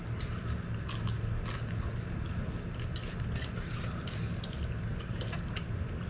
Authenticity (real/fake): real